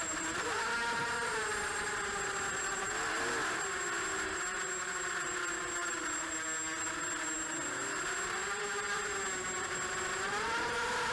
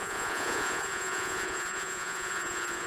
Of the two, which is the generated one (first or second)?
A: second